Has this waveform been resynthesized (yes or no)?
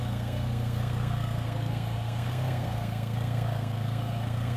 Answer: yes